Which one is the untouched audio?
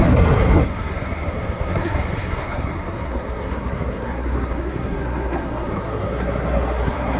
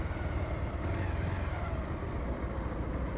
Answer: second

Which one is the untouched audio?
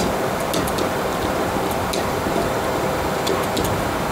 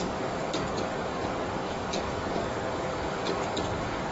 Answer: first